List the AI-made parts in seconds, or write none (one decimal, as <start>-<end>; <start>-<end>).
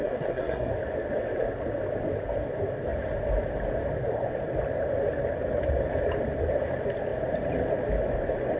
0.0-0.7